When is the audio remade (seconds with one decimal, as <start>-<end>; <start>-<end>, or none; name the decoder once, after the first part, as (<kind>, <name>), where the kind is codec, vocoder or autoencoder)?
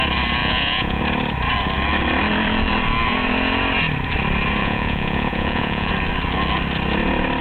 0.4-1.0 (vocoder, Vocos); 4.6-5.9